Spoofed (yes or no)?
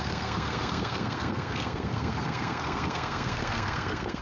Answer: yes